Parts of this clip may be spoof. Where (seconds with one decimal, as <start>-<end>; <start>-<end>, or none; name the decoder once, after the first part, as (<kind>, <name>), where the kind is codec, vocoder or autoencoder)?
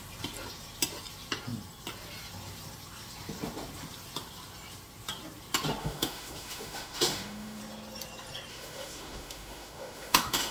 5.8-7.6 (autoencoder, DAC-VAE); 8.5-10.5